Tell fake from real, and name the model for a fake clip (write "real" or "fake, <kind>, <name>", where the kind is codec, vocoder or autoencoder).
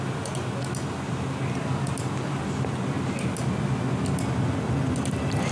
real